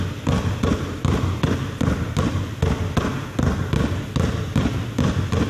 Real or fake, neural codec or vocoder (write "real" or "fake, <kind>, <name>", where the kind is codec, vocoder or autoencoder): real